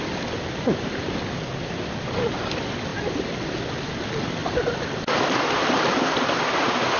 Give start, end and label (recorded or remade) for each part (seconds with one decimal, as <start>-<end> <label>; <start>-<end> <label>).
0.0-7.0 recorded